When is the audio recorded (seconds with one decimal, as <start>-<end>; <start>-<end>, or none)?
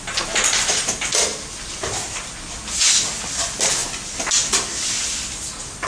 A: 0.0-5.9